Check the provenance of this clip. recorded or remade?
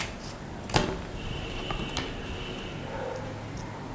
recorded